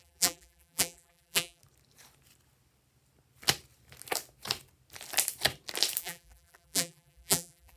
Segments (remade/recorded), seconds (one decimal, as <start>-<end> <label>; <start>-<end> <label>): 0.0-1.6 remade; 1.6-6.0 recorded; 6.0-7.8 remade